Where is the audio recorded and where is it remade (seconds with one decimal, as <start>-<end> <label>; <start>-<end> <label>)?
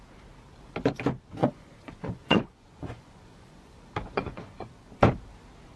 0.0-1.4 recorded; 1.4-4.9 remade; 4.9-5.8 recorded